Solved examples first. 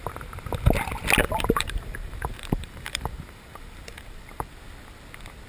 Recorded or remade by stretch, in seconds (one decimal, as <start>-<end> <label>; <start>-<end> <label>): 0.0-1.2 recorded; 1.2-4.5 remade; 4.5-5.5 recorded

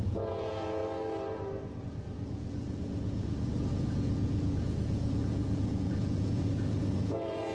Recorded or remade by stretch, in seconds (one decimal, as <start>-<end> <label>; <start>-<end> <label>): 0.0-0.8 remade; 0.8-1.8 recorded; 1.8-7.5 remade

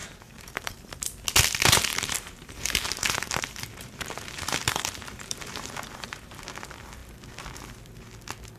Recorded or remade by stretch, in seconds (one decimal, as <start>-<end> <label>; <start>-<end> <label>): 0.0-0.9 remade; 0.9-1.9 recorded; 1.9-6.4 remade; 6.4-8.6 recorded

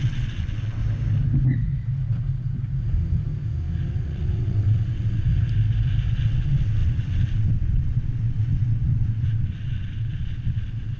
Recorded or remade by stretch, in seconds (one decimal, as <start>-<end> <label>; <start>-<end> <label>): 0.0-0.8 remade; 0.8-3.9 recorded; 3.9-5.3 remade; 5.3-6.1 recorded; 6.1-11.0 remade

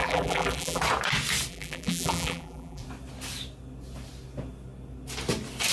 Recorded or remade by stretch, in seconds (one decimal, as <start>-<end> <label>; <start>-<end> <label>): 0.0-0.8 remade; 0.8-1.5 recorded; 1.5-2.8 remade; 2.8-5.7 recorded

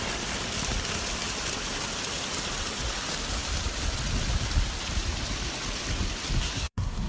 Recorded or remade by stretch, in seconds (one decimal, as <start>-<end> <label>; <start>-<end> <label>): 0.0-6.4 recorded; 6.4-7.1 remade